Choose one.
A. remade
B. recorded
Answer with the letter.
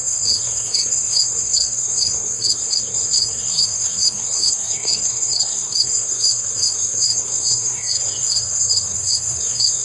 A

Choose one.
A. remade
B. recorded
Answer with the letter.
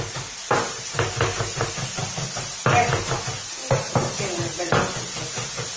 B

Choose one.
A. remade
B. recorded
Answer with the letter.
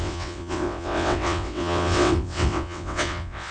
A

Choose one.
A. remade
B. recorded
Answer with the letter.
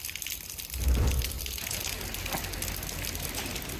B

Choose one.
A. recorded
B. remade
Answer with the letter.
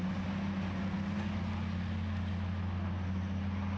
A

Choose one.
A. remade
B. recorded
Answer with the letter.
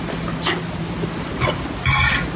B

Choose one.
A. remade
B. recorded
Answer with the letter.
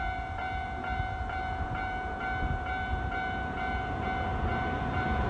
A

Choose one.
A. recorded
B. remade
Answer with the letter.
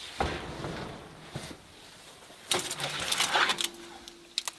A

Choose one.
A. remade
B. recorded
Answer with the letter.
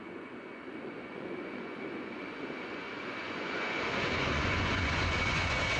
A